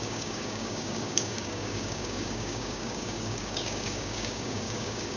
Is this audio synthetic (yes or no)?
yes